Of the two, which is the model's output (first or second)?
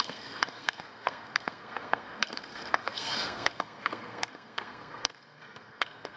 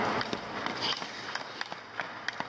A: first